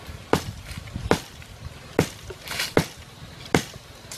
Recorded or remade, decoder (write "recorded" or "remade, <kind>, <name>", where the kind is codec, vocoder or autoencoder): recorded